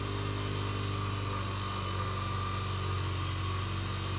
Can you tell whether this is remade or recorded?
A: recorded